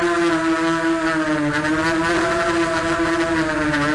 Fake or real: real